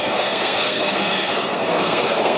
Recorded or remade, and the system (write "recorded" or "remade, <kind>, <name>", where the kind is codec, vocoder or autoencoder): remade, codec, SNAC